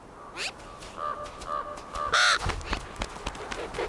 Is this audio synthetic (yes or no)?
no